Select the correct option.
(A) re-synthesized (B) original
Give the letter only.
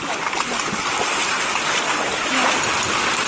B